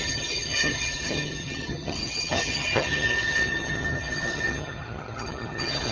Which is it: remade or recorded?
remade